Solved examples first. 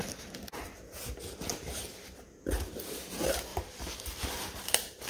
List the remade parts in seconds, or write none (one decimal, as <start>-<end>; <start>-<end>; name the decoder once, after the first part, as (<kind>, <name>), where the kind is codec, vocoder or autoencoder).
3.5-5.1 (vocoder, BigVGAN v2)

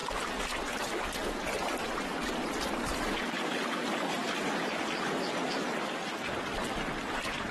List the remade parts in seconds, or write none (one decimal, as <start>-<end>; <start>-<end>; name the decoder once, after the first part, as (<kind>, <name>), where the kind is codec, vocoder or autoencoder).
4.2-7.5 (vocoder, BigVGAN v2)

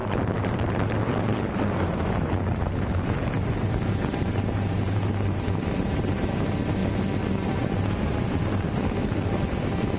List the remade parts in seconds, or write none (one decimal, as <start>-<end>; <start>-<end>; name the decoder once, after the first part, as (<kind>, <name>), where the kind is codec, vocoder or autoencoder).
0.0-6.8 (vocoder, BigVGAN v2); 7.3-10.0

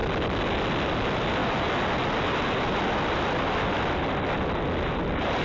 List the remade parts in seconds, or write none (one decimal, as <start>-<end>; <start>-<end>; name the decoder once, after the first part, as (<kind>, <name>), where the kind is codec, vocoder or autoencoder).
none

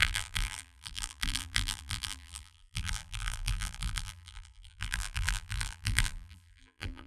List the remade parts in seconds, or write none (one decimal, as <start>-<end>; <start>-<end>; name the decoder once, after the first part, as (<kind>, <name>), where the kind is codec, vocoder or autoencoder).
0.0-7.1 (vocoder, BigVGAN v2)